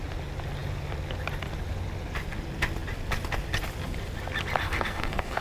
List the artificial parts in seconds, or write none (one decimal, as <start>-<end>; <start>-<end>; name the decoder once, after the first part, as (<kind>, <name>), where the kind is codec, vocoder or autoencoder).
4.6-5.4 (codec, SNAC)